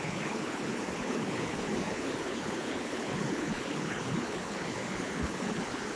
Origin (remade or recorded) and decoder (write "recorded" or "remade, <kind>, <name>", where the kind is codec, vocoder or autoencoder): remade, codec, HILCodec